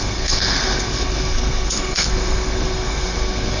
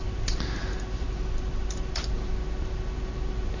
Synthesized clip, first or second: first